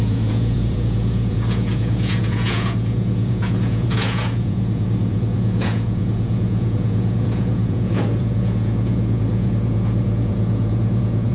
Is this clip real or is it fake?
fake